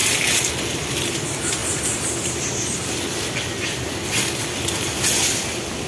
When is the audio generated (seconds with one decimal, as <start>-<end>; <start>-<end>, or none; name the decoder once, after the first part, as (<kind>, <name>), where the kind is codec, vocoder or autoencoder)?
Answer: none